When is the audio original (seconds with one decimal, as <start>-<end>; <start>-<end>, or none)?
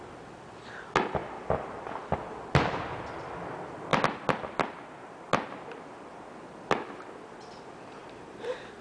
0.0-8.0